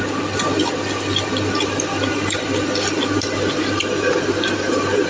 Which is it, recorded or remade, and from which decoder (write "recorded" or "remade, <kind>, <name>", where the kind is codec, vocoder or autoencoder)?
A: recorded